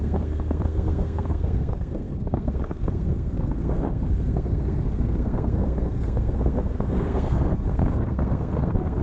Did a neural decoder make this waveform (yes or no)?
yes